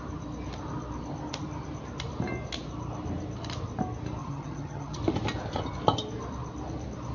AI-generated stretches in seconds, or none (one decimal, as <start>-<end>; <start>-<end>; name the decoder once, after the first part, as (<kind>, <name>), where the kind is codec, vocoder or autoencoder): 4.2-5.0 (vocoder, HiFi-GAN)